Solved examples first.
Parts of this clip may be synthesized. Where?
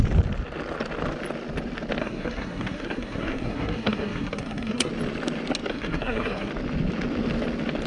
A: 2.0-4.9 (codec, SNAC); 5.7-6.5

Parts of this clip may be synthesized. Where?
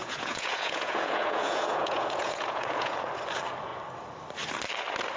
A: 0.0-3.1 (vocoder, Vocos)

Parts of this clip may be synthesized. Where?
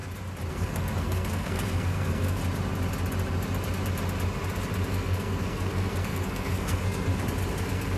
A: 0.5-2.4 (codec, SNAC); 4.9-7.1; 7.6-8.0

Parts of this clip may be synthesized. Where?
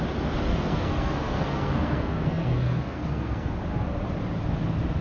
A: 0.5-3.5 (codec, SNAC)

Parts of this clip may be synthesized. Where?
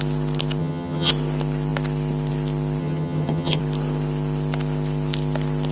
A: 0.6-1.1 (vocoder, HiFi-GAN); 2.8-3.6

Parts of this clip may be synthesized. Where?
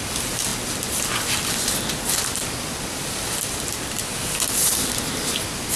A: none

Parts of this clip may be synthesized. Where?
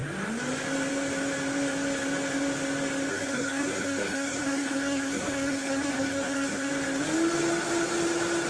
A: 3.1-6.7 (codec, SNAC)